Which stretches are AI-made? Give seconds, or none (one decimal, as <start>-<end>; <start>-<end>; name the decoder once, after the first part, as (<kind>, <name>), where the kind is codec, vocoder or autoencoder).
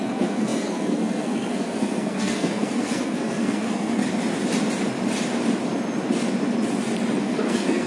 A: 0.0-4.0 (codec, SNAC); 7.2-7.9